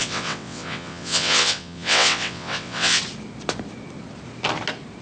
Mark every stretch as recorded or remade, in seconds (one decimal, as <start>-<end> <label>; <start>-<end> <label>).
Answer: 0.0-3.0 remade; 3.0-5.0 recorded